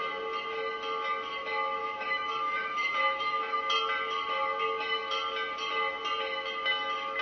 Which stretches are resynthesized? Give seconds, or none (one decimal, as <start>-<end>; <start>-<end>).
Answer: 1.8-3.6